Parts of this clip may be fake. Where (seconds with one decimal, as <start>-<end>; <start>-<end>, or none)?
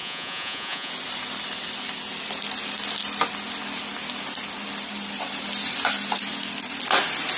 0.0-0.9